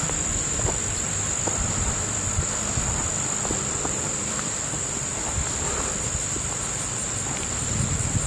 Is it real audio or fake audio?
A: fake